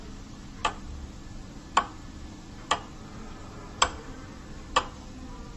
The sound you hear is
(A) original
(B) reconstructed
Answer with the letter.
A